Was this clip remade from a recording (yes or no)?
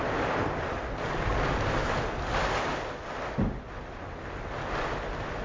no